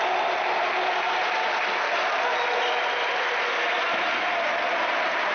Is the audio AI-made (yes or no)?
no